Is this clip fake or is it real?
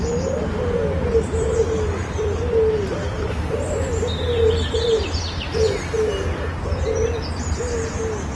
real